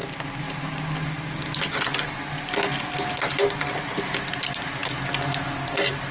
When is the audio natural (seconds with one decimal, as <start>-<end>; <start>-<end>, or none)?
0.0-6.1